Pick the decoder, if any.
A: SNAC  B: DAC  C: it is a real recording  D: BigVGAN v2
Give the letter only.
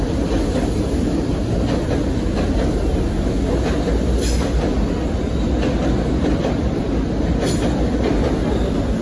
C